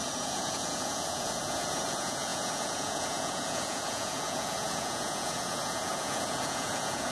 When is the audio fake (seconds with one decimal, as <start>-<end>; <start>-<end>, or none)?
0.0-7.1